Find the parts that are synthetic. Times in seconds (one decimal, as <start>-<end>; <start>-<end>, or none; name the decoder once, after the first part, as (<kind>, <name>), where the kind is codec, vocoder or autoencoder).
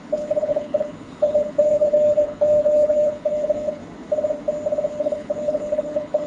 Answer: 0.0-3.8 (codec, HILCodec); 4.9-6.3